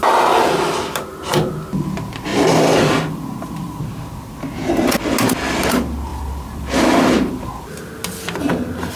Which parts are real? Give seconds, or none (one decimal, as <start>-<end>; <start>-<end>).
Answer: 0.0-2.3; 3.8-6.1; 7.5-9.0